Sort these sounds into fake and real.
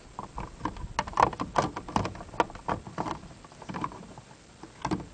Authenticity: real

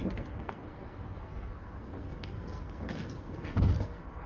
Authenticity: fake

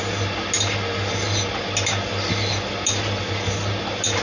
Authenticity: real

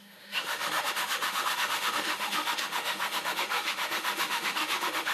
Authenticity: fake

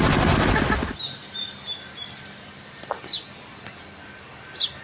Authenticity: real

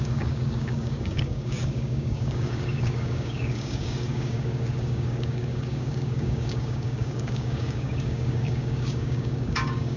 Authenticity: fake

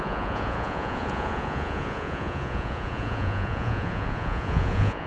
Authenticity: fake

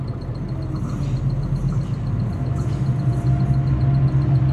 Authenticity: real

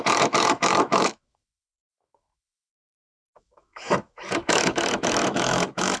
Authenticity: fake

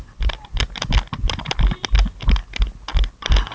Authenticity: real